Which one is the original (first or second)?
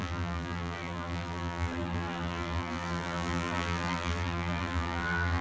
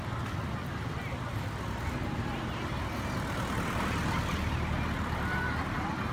second